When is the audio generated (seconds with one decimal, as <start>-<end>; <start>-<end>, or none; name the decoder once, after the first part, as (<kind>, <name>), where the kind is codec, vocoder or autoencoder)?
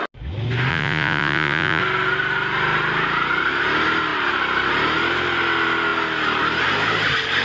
0.7-1.8 (vocoder, Vocos)